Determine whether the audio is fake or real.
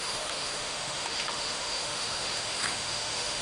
fake